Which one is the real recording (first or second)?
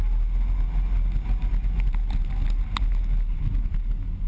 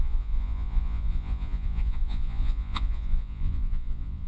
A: first